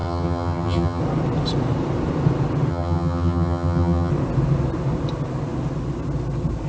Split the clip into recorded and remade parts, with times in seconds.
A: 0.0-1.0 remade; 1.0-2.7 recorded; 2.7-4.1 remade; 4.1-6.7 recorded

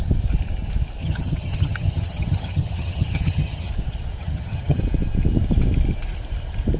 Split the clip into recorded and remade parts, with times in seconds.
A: 0.0-1.0 recorded; 1.0-3.7 remade; 3.7-4.2 recorded; 4.2-4.8 remade; 4.8-6.8 recorded

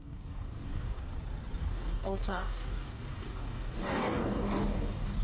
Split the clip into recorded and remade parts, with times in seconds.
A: 0.0-1.0 remade; 1.0-1.6 recorded; 1.6-5.2 remade

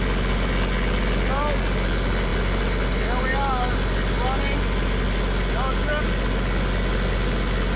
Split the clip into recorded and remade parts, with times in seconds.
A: 0.0-7.8 recorded

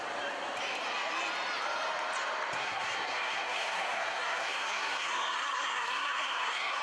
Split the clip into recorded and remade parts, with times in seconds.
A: 0.0-2.6 recorded; 2.6-6.8 remade

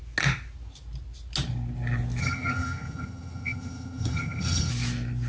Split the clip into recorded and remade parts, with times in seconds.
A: 0.0-2.2 recorded; 2.2-4.7 remade; 4.7-5.3 recorded

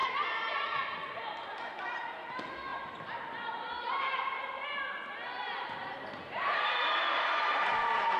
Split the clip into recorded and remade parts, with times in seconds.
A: 0.0-2.1 remade; 2.1-2.7 recorded; 2.7-3.3 remade; 3.3-5.8 recorded; 5.8-8.2 remade

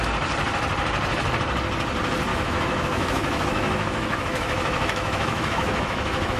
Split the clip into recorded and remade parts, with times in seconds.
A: 0.0-2.3 recorded; 2.3-6.4 remade